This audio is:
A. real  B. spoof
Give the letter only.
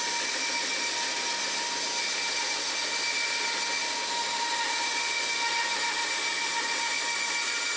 A